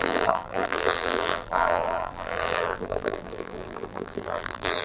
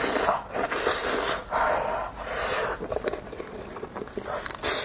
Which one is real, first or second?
second